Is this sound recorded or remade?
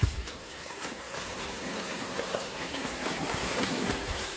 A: remade